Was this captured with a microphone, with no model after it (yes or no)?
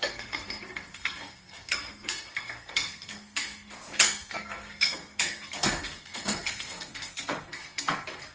no